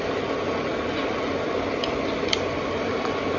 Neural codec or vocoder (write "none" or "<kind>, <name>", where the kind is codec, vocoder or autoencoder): none